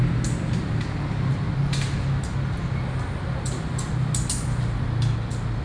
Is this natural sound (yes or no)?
yes